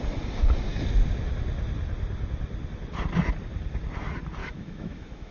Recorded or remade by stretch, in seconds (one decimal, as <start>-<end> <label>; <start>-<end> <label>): 0.0-4.4 recorded; 4.4-5.3 remade